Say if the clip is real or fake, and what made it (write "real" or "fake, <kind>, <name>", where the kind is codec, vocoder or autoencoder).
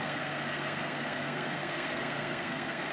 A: fake, codec, SNAC